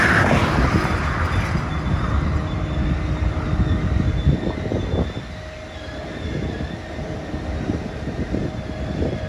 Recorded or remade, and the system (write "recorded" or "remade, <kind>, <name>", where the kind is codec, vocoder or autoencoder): recorded